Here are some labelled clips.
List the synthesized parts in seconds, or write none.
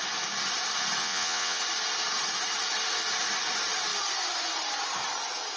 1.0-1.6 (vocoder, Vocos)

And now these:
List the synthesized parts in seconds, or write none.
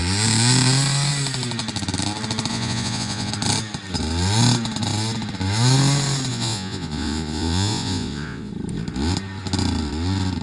2.5-3.3 (vocoder, Vocos); 6.3-8.5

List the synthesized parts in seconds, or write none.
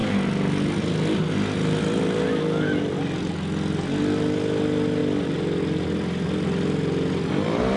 none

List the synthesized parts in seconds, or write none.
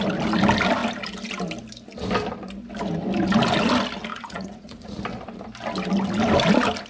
4.1-5.0 (vocoder, Vocos)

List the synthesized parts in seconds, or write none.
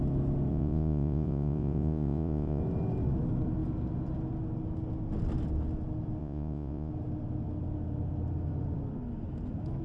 0.5-2.6 (vocoder, Vocos); 6.2-6.9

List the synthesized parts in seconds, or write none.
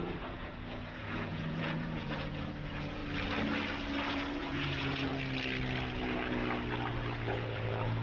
0.0-3.0 (vocoder, Vocos); 4.1-5.1; 6.0-6.4; 7.1-8.0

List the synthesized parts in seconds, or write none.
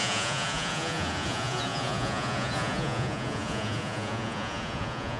0.0-5.2 (vocoder, Vocos)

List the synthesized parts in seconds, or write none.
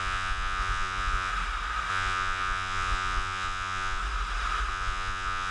0.0-1.3 (vocoder, Vocos); 1.9-4.0; 4.7-5.5